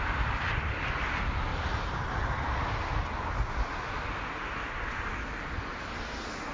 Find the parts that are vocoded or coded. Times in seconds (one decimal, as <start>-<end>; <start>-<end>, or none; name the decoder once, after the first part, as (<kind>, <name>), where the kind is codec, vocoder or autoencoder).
none

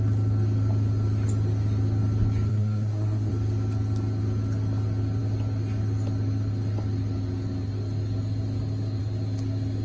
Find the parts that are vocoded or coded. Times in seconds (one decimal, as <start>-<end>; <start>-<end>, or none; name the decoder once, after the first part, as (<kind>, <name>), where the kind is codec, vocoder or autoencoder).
2.5-3.3 (codec, SNAC)

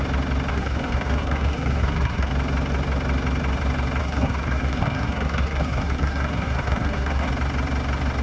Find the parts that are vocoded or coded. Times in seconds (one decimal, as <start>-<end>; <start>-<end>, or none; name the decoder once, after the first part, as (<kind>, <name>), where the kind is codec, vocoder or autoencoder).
0.5-2.3 (codec, SNAC); 4.0-7.3

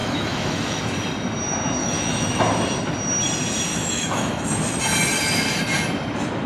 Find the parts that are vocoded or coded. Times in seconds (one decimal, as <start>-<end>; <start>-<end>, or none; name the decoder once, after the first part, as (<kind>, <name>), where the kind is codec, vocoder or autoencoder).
0.0-0.8 (autoencoder, DAC-VAE); 1.8-2.4; 3.7-4.5

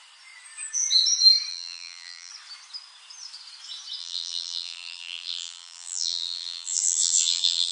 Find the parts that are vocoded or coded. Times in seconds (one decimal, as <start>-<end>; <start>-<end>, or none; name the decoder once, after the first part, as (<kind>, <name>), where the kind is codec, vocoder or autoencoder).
1.5-2.3 (vocoder, BigVGAN v2); 4.0-7.7

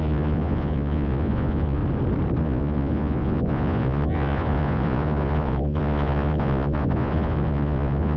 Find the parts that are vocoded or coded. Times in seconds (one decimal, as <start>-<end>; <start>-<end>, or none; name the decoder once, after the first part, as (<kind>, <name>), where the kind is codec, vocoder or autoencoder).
0.0-1.8 (vocoder, Vocos); 2.4-8.2